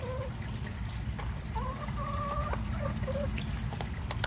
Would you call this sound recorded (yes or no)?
yes